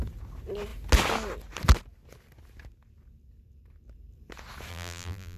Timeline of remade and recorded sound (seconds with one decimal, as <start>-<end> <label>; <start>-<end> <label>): 0.0-4.7 recorded; 4.7-5.4 remade